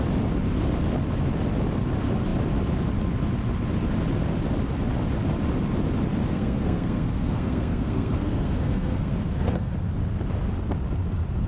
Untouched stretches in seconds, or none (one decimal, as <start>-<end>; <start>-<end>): 0.0-6.3; 9.7-11.5